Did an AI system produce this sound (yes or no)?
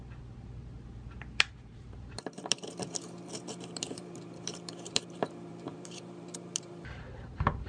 yes